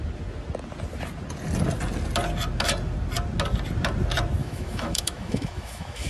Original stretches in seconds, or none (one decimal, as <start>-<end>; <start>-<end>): 0.0-4.4